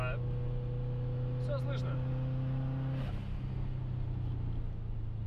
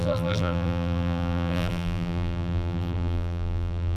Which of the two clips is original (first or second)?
first